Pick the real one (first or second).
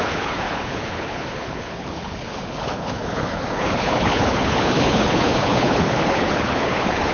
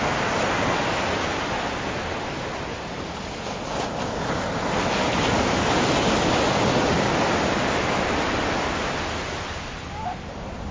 second